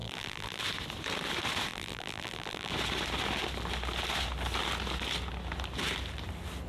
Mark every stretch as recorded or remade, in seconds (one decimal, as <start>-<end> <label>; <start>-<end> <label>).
0.0-0.6 remade; 0.6-1.7 recorded; 1.7-2.7 remade; 2.7-6.7 recorded